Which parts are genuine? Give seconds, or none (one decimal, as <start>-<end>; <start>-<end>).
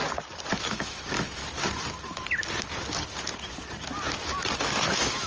0.0-0.6; 1.4-4.6